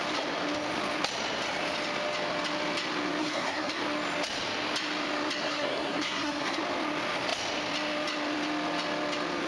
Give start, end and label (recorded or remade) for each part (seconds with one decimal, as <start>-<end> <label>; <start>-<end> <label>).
0.0-3.2 recorded; 3.2-3.8 remade; 3.8-5.4 recorded; 5.4-6.6 remade; 6.6-9.5 recorded